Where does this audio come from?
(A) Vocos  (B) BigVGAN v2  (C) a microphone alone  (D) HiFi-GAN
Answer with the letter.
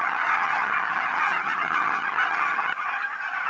D